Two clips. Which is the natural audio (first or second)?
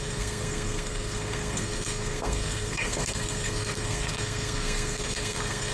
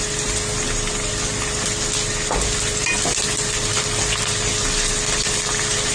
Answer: second